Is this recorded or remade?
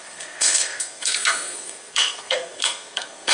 remade